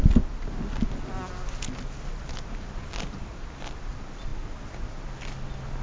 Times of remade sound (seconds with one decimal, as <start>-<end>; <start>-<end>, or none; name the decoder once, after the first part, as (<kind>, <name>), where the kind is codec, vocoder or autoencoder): none